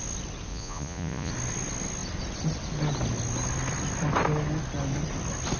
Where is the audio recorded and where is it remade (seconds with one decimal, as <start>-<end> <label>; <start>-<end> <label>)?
0.0-0.5 recorded; 0.5-1.3 remade; 1.3-5.6 recorded